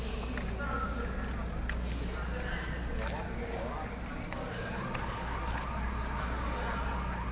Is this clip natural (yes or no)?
yes